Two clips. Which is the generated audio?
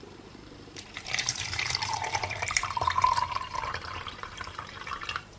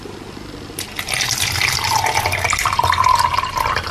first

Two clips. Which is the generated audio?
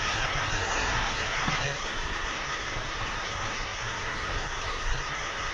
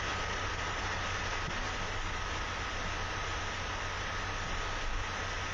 first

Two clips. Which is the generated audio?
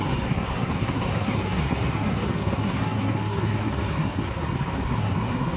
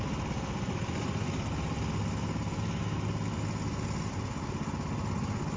first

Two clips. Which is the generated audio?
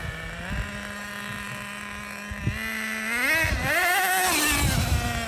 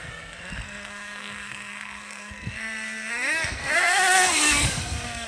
second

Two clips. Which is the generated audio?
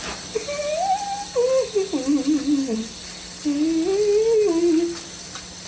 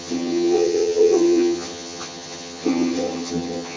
second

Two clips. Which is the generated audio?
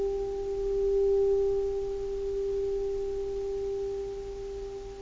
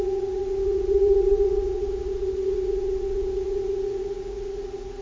second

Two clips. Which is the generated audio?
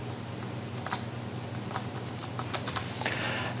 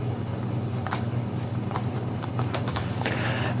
second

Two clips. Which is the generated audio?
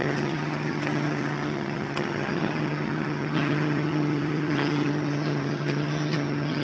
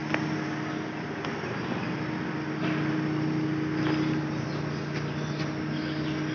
first